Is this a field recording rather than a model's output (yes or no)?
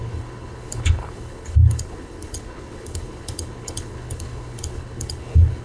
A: no